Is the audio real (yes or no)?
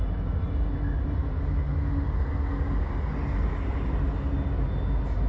yes